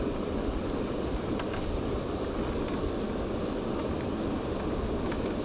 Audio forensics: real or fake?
real